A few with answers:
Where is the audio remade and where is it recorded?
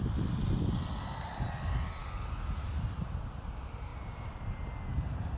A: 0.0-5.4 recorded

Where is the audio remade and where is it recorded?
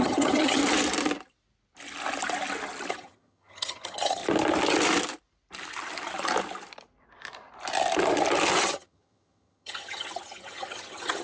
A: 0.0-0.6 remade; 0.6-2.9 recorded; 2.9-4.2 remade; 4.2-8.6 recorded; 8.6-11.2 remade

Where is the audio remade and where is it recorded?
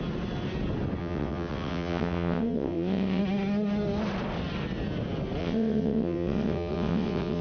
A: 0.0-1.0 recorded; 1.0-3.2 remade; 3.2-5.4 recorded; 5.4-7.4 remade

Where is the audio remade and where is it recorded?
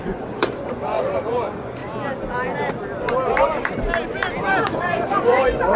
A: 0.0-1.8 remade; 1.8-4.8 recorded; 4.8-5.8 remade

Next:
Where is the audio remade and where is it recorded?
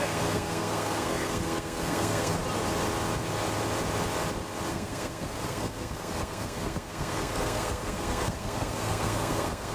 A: 0.0-2.4 remade; 2.4-4.7 recorded; 4.7-9.7 remade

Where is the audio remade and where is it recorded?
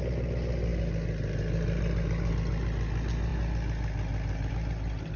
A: 0.0-5.2 recorded